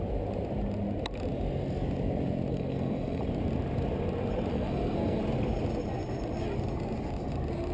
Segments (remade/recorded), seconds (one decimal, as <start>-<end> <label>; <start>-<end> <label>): 0.0-2.5 recorded; 2.5-3.2 remade; 3.2-4.5 recorded; 4.5-5.2 remade; 5.2-7.7 recorded